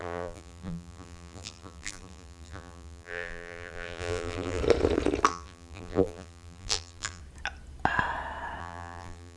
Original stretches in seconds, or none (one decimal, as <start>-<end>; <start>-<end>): 4.6-5.3; 7.2-8.6